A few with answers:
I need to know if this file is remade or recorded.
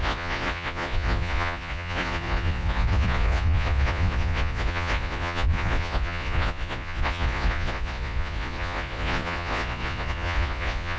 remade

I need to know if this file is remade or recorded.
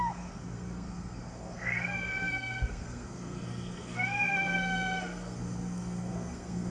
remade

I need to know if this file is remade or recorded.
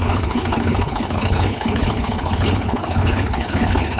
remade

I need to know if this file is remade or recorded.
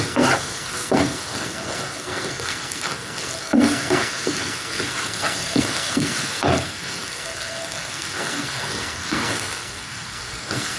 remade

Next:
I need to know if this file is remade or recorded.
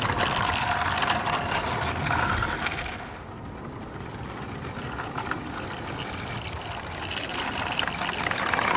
recorded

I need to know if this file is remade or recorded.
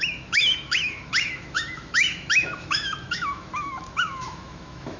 remade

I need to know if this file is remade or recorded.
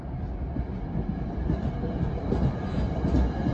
recorded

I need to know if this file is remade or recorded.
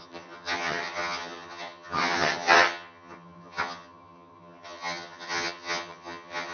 remade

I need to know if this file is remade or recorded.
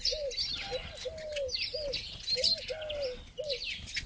recorded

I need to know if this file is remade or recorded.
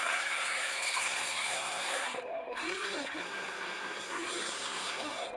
remade